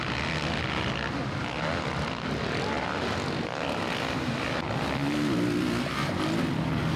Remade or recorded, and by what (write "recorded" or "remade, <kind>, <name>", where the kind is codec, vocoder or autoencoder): recorded